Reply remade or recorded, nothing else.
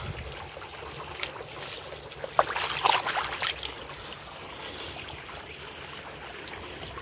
recorded